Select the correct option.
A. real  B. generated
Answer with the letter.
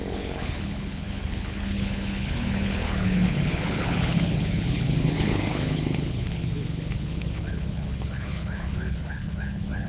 B